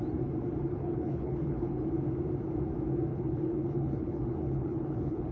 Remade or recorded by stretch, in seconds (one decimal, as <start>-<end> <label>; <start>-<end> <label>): 0.0-0.7 recorded; 0.7-1.9 remade; 1.9-3.1 recorded; 3.1-5.3 remade